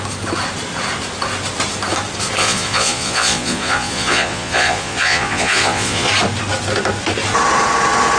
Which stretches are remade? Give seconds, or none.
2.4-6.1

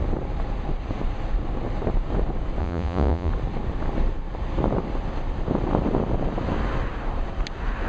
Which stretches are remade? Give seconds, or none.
2.6-3.3

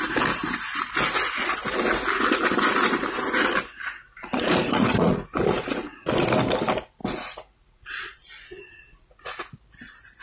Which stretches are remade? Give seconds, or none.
3.8-6.1; 7.0-9.6